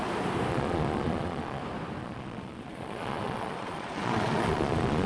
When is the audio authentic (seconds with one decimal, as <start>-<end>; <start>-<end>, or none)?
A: 0.0-0.5; 1.6-2.0